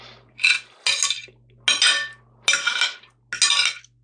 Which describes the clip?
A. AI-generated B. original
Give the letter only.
B